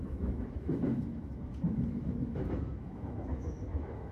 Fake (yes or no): yes